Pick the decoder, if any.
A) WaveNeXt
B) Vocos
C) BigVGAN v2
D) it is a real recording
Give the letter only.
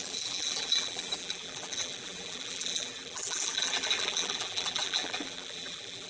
C